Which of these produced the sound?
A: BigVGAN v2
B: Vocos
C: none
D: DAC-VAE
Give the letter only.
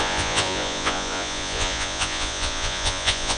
B